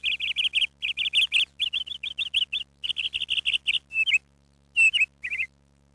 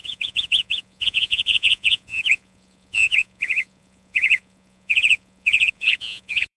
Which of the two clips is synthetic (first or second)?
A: second